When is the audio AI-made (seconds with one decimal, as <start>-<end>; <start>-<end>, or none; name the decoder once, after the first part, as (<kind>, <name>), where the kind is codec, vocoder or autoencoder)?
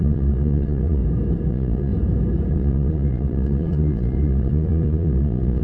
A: 0.0-1.0 (vocoder, Vocos); 1.5-1.9; 2.5-5.6